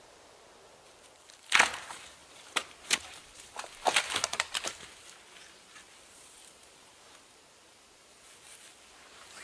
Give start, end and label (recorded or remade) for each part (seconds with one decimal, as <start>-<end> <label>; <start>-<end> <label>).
0.0-9.4 remade